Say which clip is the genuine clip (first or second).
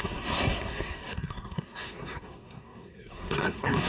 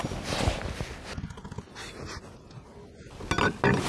second